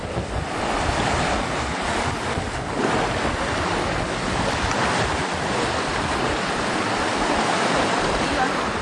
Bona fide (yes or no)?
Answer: yes